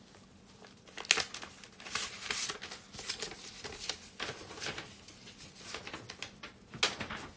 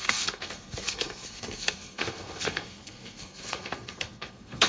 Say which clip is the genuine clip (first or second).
first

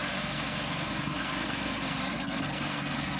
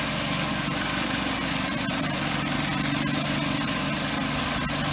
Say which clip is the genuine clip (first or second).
second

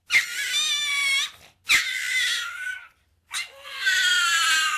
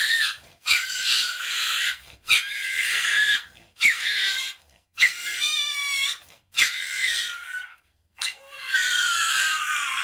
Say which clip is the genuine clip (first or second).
first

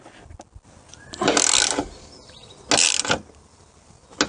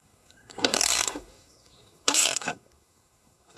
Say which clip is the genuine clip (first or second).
first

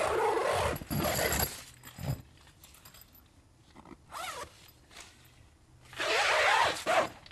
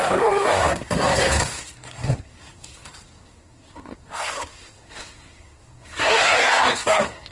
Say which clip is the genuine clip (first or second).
first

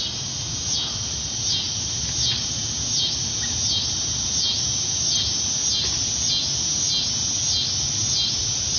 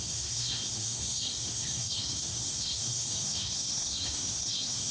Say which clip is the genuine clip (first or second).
first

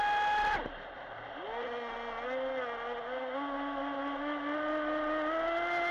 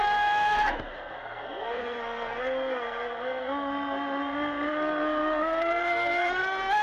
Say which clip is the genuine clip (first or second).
first